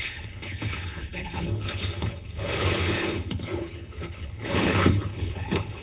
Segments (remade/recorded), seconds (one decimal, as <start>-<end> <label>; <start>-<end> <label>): 0.0-5.8 remade